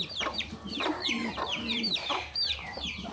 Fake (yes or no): yes